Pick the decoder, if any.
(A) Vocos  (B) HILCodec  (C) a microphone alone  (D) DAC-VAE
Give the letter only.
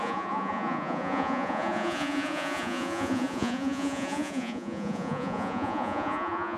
A